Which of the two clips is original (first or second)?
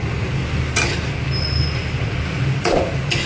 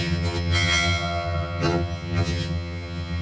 first